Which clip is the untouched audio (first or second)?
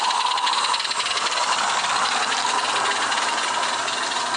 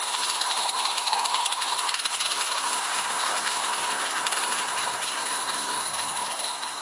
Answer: first